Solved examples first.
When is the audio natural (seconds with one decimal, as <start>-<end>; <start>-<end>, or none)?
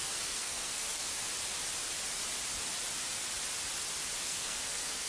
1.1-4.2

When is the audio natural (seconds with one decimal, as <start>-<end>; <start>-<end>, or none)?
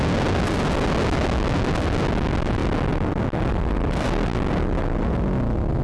0.0-5.8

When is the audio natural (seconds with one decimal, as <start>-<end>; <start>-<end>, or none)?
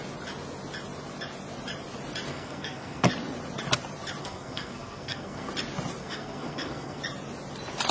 0.0-2.3; 3.1-4.2; 5.5-6.0; 7.0-7.9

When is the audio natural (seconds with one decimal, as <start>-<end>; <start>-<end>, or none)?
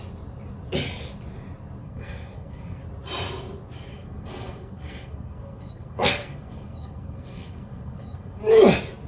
0.0-1.8; 2.8-3.9; 8.4-9.1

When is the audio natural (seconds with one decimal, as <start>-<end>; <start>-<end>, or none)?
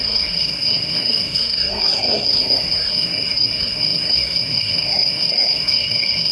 none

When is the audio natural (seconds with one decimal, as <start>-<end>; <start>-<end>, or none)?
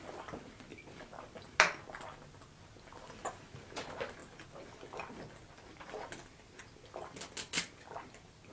0.0-8.5